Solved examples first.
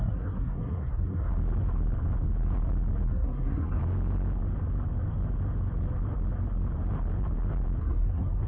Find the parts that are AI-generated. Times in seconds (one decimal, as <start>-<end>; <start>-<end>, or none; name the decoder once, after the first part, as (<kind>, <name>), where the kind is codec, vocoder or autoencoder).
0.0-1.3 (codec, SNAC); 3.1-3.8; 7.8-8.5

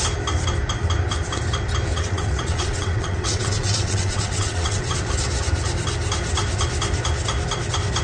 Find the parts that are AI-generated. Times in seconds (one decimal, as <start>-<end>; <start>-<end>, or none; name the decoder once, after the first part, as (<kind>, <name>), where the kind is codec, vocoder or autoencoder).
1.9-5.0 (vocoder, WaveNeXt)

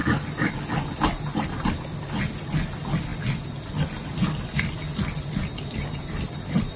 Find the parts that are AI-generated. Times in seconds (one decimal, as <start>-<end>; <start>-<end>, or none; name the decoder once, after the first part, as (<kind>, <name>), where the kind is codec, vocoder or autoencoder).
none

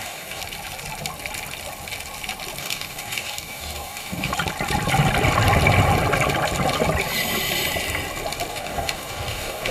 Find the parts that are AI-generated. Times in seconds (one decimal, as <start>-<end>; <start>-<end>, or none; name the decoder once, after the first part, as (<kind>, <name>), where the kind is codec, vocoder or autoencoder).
0.0-0.4 (codec, DAC); 2.6-4.3; 8.5-9.7